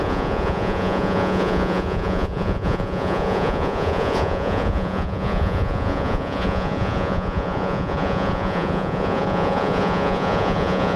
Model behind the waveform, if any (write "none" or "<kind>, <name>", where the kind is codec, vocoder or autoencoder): vocoder, Vocos